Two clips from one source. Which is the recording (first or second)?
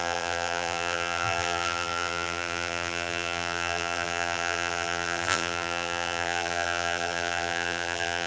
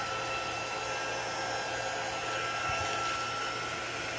second